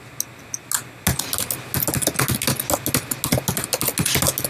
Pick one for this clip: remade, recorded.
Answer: recorded